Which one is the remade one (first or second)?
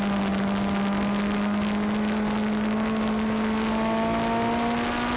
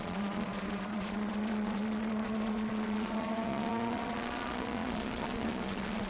second